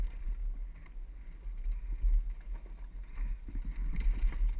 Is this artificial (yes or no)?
no